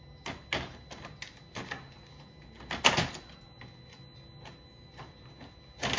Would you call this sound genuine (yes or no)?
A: yes